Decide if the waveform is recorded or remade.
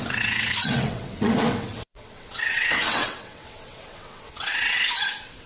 remade